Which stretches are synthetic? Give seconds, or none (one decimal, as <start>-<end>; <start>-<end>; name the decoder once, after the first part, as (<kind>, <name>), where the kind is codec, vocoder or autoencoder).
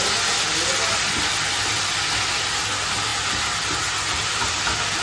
none